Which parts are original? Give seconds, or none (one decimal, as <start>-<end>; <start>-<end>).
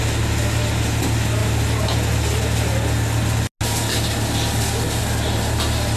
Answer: 0.0-6.0